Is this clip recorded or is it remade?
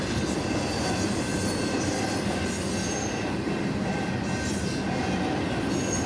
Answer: recorded